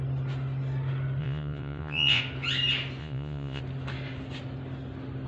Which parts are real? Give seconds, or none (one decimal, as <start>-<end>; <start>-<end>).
0.0-1.2; 2.2-3.0; 3.6-5.3